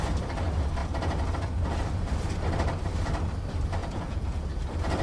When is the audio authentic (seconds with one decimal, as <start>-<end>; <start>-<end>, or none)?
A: 0.0-3.8; 4.4-5.0